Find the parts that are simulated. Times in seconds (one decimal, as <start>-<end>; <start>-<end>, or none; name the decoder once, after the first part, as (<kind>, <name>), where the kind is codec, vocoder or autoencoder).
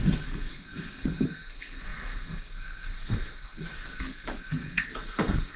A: 0.0-5.6 (codec, SNAC)